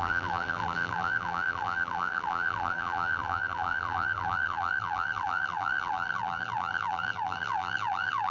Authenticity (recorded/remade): remade